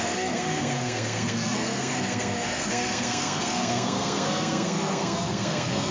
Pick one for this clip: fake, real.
fake